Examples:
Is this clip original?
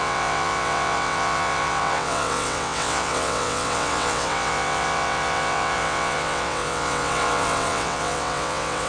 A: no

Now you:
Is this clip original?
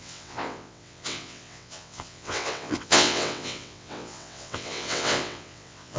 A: no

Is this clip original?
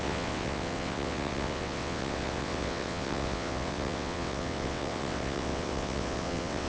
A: no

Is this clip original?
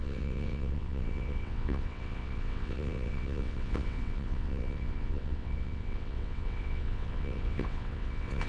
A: no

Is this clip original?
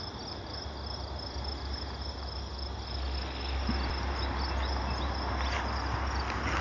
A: yes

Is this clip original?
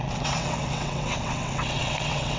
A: no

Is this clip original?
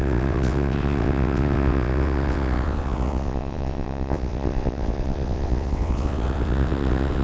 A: no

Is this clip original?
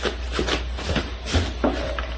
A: yes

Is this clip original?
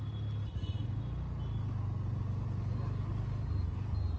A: yes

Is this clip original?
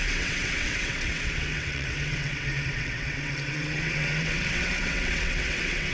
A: no